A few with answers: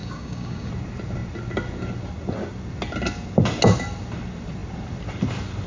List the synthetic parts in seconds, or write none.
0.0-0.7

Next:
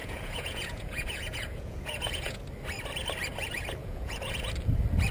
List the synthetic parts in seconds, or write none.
0.0-2.4; 3.8-4.5

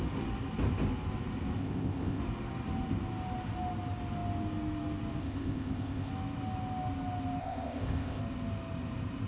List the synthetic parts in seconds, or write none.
1.6-2.2; 5.2-6.1; 7.4-8.2

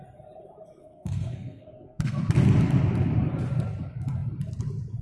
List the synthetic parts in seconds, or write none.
0.8-2.2

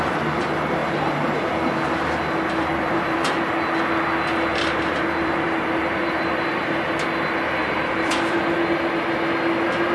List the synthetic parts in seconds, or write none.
0.8-1.5; 2.7-3.5; 4.5-6.8; 7.6-8.4

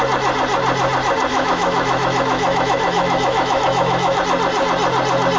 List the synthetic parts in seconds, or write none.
1.3-4.2

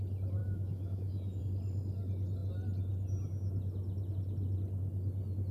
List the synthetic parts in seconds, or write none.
0.4-1.4

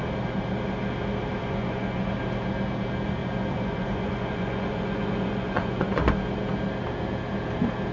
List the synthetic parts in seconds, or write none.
1.4-2.1; 3.2-6.1